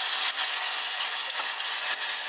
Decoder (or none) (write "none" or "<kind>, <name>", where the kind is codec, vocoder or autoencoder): vocoder, Vocos